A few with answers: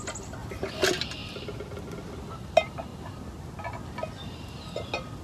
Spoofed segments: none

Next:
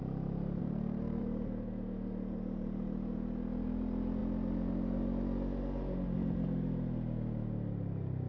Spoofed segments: 0.6-1.2 (codec, SNAC)

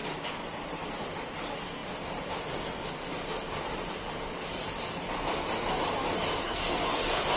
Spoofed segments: 6.4-7.0 (codec, SNAC)

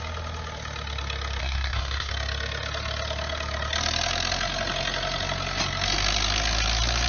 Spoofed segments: 1.4-2.1 (codec, SNAC)